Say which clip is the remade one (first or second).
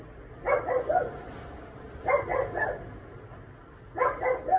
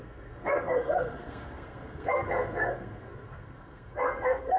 second